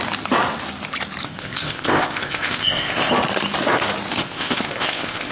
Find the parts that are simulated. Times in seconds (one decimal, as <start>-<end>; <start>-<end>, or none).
1.2-3.1; 4.1-5.3